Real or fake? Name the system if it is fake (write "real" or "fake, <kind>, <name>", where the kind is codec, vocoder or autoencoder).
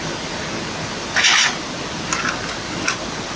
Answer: real